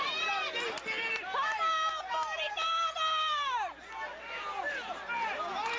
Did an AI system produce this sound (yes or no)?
yes